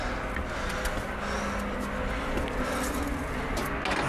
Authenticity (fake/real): real